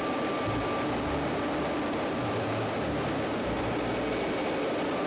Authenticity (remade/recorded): remade